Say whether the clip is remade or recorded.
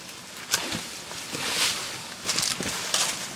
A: recorded